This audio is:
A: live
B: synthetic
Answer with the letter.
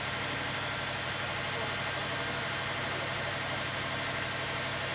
A